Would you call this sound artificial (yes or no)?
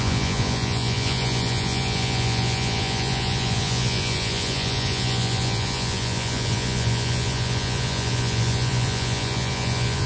yes